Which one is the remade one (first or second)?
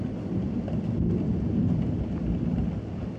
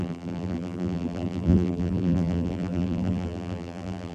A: second